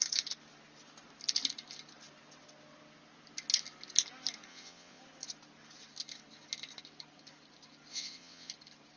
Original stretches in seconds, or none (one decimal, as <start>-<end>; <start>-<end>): 0.0-4.5; 5.0-7.9; 8.5-9.0

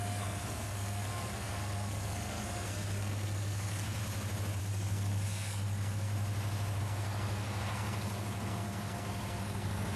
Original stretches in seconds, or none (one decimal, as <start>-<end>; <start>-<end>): 4.0-4.6; 6.1-6.8

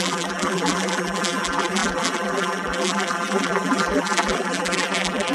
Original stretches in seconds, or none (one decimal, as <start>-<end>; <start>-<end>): none